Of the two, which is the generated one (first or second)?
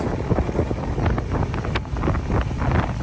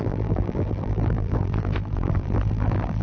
second